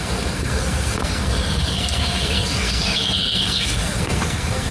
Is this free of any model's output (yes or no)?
no